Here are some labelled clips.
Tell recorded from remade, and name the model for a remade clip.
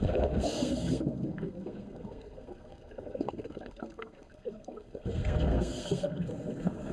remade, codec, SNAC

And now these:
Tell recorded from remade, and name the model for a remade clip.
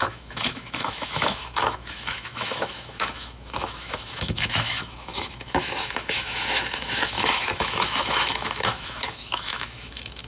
remade, autoencoder, DAC-VAE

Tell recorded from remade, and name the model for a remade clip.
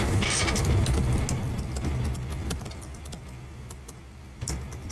recorded